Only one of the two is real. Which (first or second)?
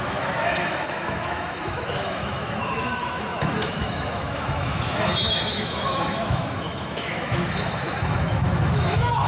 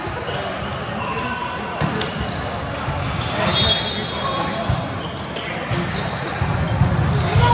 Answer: second